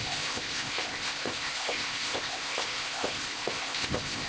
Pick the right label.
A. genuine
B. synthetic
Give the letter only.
B